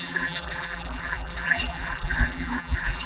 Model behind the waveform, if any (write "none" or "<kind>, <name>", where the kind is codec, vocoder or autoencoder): vocoder, BigVGAN v2